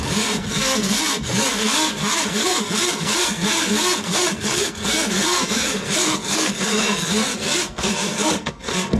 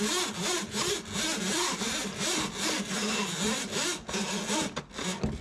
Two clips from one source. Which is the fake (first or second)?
first